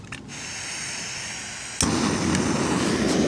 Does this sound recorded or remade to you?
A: recorded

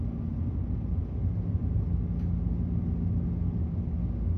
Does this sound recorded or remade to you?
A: recorded